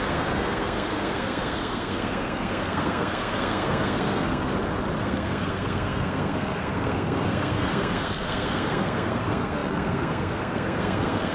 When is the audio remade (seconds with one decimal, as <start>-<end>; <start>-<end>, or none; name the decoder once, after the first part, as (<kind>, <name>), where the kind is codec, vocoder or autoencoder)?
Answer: 0.0-4.5 (codec, SNAC); 5.0-11.3

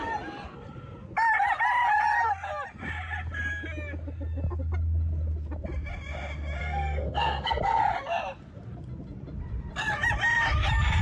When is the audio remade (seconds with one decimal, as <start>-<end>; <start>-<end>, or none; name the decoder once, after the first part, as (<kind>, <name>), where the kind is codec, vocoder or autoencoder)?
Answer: 6.6-7.8 (codec, SNAC)

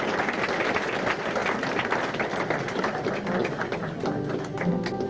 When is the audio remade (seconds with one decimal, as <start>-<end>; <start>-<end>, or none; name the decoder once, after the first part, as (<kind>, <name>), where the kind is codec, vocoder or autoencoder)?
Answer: none

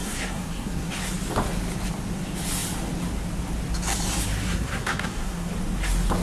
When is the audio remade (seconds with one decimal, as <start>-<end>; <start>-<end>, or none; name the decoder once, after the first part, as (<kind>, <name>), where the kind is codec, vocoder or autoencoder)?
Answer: 0.0-0.9 (codec, SNAC); 4.4-5.5